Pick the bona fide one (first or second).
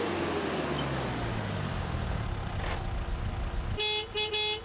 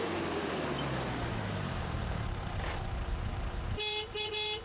first